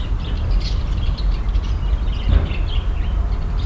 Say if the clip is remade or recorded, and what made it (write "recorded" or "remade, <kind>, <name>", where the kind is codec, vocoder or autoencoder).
recorded